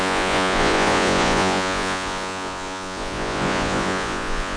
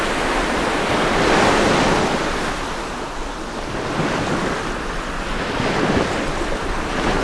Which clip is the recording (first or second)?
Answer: second